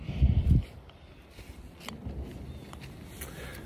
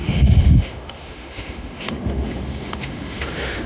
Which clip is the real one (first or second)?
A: first